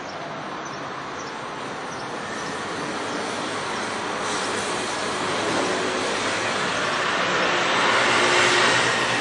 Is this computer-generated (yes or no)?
no